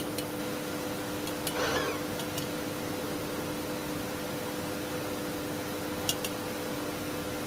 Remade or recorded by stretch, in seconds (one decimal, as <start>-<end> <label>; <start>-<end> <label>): 0.0-7.5 recorded